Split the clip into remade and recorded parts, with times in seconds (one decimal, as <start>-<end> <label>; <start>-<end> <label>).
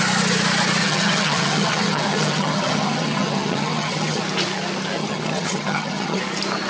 0.0-0.8 recorded; 0.8-4.2 remade; 4.2-5.0 recorded; 5.0-6.2 remade; 6.2-6.7 recorded